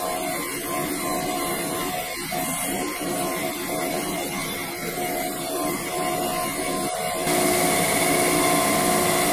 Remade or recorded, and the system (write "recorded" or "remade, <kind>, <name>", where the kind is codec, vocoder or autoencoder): recorded